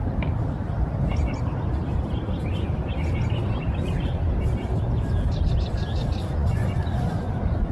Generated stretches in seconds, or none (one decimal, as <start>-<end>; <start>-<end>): 6.2-7.3

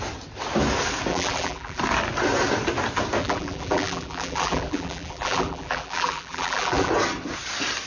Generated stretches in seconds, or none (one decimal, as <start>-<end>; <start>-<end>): 1.1-1.8; 3.2-6.9

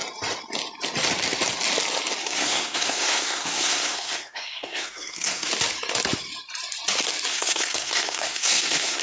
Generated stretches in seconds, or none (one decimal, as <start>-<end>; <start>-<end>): 2.2-5.5; 7.3-9.0

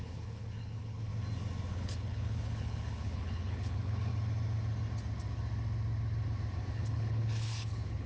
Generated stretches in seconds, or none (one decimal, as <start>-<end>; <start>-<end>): 0.0-1.1; 1.7-4.1; 6.7-8.1

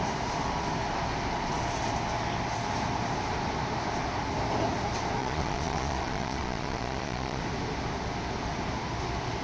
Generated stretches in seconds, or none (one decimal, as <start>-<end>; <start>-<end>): 5.2-7.4

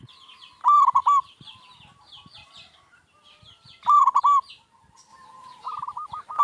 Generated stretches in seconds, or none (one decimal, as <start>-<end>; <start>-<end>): 1.0-4.5; 5.1-6.4